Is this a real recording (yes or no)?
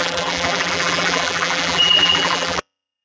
no